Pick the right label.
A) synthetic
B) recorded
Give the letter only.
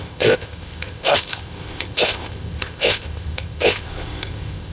A